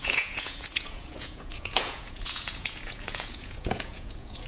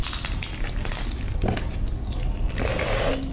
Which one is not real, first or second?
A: first